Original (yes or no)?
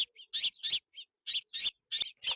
yes